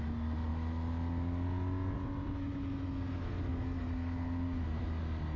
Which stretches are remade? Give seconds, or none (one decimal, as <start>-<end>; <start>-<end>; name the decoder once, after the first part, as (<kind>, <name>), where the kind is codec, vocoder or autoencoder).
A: none